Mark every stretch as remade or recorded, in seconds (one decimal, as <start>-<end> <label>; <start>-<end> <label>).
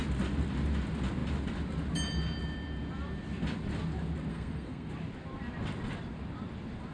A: 0.0-4.3 recorded; 4.3-4.9 remade; 4.9-6.9 recorded